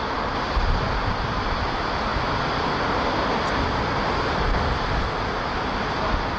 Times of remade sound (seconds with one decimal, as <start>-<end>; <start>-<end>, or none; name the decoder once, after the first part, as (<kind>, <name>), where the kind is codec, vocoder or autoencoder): 0.0-1.4 (vocoder, BigVGAN v2)